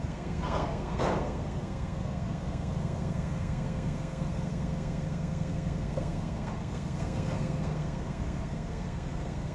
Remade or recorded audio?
remade